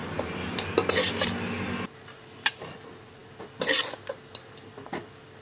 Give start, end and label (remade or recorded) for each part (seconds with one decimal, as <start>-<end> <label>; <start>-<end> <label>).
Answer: 0.0-5.4 recorded